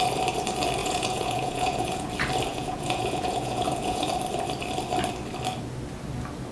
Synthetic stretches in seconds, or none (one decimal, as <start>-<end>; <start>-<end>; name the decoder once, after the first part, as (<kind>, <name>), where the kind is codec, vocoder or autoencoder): 0.8-2.1 (vocoder, Vocos); 2.5-4.1